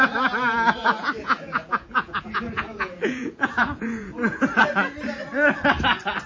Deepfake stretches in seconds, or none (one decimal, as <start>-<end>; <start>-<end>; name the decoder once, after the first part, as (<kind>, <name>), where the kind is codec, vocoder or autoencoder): 0.8-4.6 (vocoder, Vocos)